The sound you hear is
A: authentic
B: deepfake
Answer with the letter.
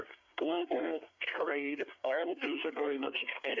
B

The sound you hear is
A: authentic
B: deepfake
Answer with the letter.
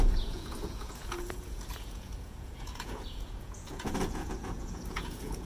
B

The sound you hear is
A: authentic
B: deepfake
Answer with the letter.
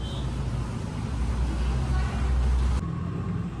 A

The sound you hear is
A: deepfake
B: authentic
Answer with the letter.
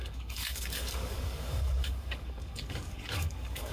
A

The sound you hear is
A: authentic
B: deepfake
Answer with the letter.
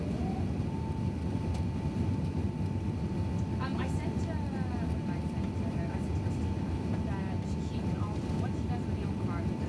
A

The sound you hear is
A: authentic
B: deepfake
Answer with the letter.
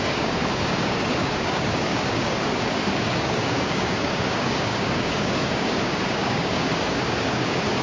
B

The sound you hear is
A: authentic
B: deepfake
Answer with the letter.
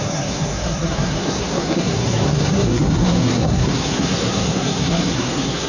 B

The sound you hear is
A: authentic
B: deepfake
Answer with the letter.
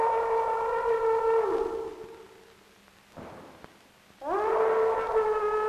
A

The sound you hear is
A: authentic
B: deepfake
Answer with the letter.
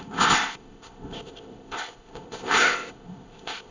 B